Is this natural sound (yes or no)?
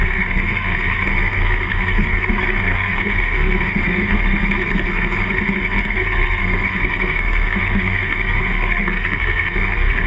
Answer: no